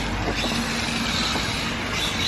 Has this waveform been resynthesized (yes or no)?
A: no